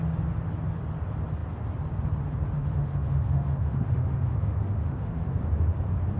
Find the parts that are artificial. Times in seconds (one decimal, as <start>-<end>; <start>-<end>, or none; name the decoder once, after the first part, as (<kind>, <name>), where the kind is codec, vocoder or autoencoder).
2.6-5.3 (autoencoder, DAC-VAE)